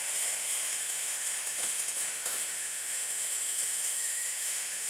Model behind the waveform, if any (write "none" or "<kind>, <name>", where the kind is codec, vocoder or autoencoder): autoencoder, DAC-VAE